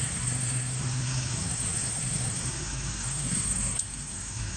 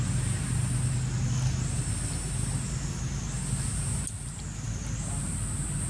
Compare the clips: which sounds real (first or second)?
second